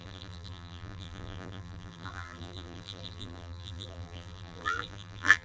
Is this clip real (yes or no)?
no